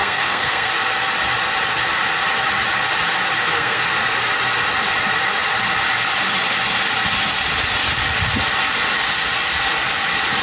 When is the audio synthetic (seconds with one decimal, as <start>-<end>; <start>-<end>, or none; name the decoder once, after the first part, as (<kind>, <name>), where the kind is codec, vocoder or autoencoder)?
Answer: 0.0-0.7 (codec, SNAC); 3.4-3.9